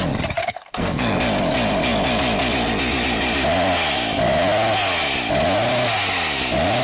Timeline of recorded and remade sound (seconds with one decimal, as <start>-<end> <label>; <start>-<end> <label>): 0.0-0.4 recorded; 0.4-1.2 remade; 1.2-6.8 recorded